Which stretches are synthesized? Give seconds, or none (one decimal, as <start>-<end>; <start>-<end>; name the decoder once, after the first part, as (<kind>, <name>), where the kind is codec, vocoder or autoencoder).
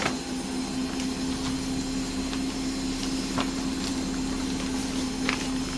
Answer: none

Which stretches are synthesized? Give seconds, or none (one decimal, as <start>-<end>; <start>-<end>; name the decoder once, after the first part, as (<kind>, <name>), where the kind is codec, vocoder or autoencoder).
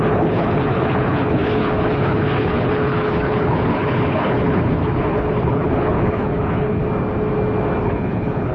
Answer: 0.0-6.8 (codec, HILCodec); 7.8-8.5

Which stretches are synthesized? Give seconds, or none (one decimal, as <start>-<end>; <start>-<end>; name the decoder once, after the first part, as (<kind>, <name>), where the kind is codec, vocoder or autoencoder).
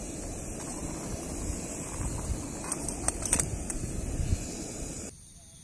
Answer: none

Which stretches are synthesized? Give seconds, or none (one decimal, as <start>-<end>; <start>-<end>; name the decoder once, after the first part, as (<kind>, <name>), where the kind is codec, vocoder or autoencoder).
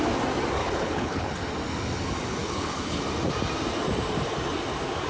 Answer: 0.6-1.4 (codec, HILCodec); 2.4-3.0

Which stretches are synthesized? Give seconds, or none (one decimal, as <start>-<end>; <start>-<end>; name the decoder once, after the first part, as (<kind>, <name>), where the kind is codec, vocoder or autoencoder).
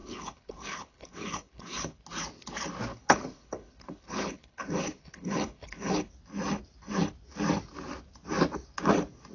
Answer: 0.0-2.0 (codec, HILCodec); 2.9-6.1